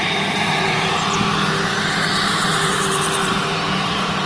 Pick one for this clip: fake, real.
fake